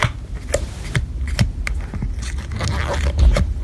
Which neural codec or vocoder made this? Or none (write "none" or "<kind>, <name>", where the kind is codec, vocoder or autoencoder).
none